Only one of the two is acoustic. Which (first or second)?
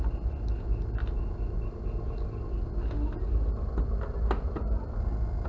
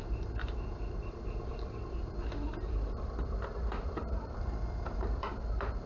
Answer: first